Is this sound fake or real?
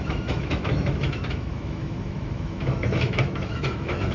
fake